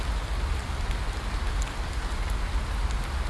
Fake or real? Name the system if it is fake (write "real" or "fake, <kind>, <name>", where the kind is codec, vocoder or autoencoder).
real